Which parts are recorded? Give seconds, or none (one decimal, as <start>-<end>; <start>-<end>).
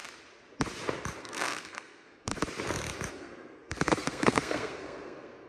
0.0-1.2; 2.3-3.1